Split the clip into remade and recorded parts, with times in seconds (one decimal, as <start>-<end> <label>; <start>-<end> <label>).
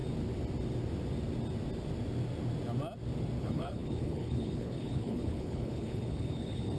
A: 0.0-3.4 recorded; 3.4-6.8 remade